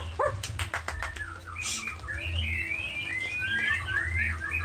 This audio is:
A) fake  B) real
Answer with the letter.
B